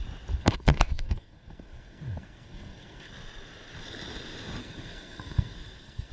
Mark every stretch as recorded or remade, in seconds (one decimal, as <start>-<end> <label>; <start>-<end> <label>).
0.0-0.4 recorded; 0.4-3.1 remade; 3.1-4.6 recorded; 4.6-6.1 remade